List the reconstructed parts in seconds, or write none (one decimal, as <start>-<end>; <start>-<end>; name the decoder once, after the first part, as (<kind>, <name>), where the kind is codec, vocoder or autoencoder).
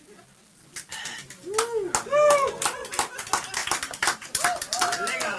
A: 0.9-1.5 (vocoder, BigVGAN v2); 3.6-5.4